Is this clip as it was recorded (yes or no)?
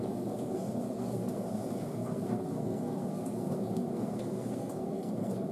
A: no